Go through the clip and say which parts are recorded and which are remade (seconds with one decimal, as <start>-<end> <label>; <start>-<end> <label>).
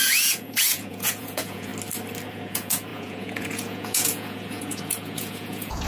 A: 0.0-1.7 remade; 1.7-2.3 recorded; 2.3-5.9 remade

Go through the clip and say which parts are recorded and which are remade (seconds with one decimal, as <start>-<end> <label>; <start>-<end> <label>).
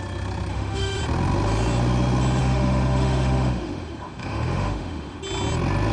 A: 0.0-0.5 recorded; 0.5-1.0 remade; 1.0-2.4 recorded; 2.4-5.2 remade; 5.2-5.9 recorded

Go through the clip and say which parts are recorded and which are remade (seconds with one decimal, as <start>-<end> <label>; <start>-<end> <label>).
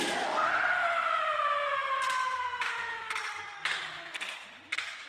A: 0.0-1.8 recorded; 1.8-3.8 remade; 3.8-5.1 recorded